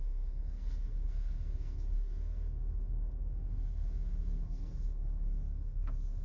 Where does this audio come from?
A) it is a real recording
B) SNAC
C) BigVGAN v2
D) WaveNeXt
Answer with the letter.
B